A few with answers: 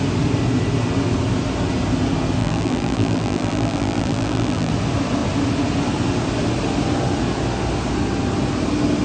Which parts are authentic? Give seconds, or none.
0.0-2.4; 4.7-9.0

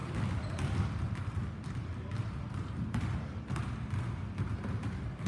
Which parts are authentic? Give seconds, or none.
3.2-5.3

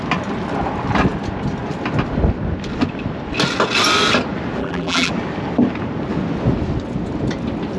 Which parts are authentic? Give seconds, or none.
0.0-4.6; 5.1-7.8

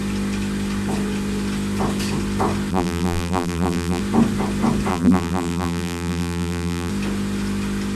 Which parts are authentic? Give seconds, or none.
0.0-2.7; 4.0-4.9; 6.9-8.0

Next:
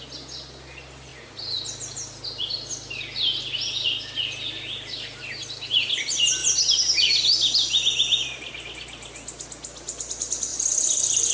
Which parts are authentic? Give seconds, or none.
0.0-10.5

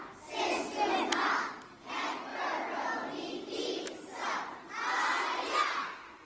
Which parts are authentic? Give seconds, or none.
0.0-2.3; 5.4-6.3

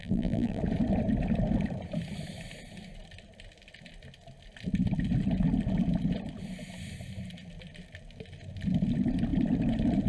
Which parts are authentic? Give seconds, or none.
0.6-10.1